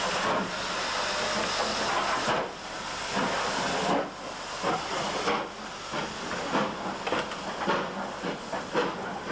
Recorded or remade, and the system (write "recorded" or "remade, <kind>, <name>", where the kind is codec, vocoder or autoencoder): recorded